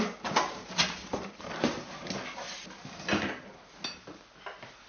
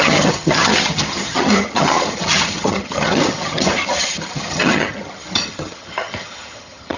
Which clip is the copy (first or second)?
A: second